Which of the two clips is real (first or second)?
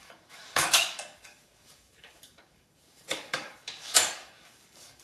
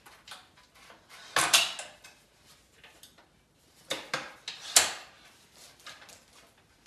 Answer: second